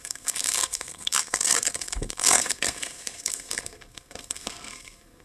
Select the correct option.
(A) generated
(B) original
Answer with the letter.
A